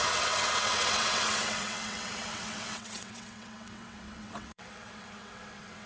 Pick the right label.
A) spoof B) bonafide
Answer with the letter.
A